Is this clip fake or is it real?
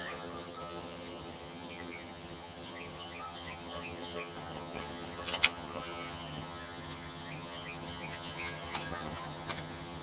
fake